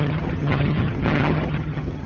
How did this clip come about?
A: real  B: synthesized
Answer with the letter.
B